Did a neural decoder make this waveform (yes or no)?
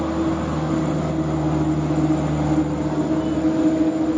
no